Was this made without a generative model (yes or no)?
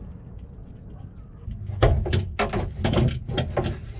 yes